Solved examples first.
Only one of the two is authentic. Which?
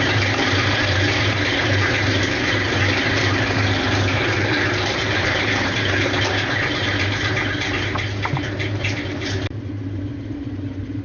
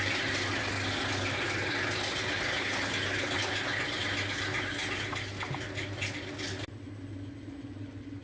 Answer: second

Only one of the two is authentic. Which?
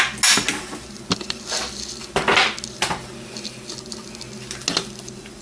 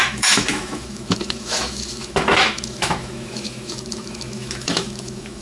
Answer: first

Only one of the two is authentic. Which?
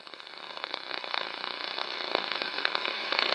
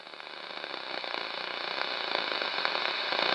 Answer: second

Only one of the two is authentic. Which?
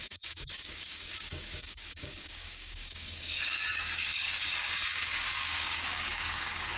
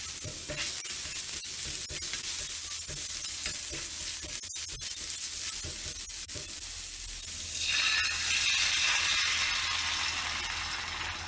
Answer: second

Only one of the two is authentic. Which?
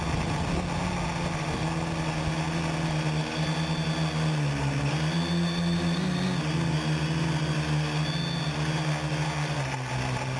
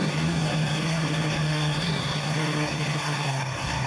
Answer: first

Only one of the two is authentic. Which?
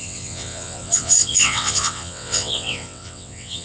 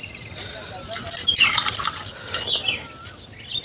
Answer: second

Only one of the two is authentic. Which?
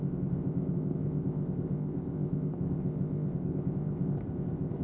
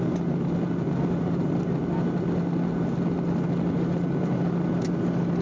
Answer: second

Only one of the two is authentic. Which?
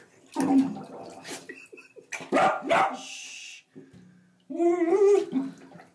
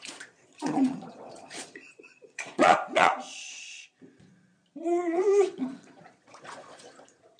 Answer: first